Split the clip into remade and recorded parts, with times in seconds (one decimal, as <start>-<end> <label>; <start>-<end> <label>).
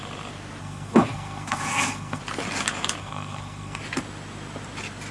0.0-0.6 recorded; 0.6-2.2 remade; 2.2-3.0 recorded; 3.0-3.8 remade; 3.8-5.1 recorded